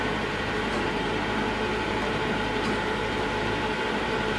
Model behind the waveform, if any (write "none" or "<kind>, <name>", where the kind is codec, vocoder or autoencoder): vocoder, BigVGAN v2